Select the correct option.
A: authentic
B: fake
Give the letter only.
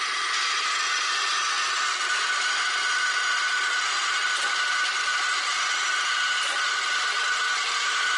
A